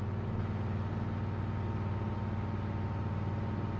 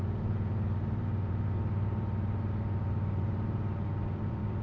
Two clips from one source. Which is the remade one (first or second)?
second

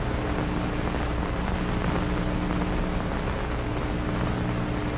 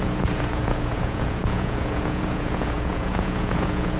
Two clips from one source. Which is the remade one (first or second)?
second